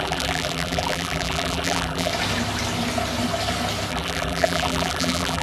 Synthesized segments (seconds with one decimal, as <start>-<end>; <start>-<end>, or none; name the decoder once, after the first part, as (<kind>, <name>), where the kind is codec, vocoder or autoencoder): 0.0-2.1 (vocoder, BigVGAN v2); 3.9-5.4